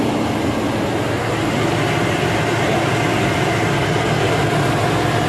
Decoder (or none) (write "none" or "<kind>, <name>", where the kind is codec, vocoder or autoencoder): none